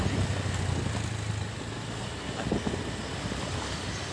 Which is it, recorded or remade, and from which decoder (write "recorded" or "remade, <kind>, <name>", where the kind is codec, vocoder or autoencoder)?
recorded